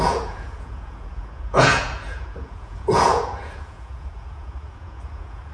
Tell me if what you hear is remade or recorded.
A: remade